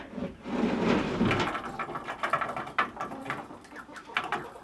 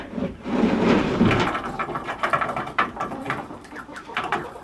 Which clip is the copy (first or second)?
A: second